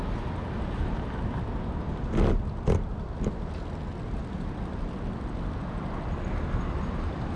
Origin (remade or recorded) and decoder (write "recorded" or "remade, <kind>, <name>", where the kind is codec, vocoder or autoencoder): recorded